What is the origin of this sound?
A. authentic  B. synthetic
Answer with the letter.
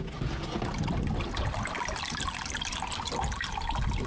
A